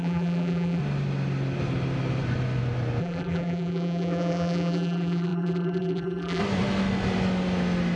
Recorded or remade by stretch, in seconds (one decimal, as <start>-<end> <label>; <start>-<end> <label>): 0.0-0.8 remade; 0.8-3.0 recorded; 3.0-6.4 remade; 6.4-8.0 recorded